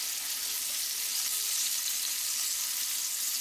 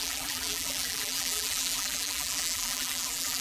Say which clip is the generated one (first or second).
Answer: second